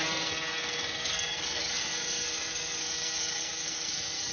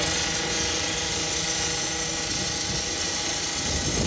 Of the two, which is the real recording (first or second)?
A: second